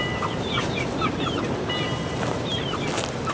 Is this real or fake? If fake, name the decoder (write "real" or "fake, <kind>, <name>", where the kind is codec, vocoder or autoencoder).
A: real